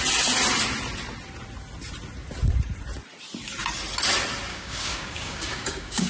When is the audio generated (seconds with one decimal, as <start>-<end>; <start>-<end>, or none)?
4.5-6.1